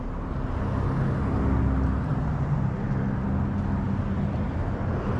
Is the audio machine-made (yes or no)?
no